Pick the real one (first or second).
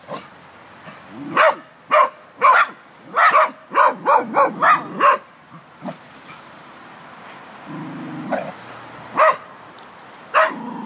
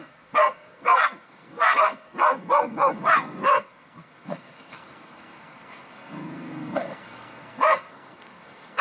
first